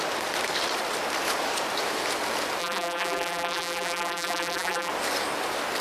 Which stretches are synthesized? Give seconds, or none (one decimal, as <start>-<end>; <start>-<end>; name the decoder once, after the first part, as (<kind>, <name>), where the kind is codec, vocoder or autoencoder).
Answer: 2.6-4.9 (vocoder, BigVGAN v2)